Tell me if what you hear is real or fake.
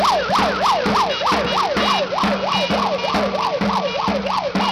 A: real